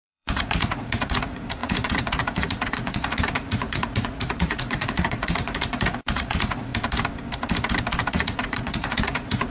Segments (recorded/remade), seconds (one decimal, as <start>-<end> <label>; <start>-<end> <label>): 0.0-6.7 remade; 6.7-8.1 recorded; 8.1-9.5 remade